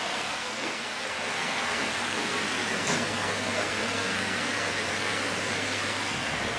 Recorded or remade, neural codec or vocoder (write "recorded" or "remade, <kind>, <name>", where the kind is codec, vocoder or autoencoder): remade, codec, SNAC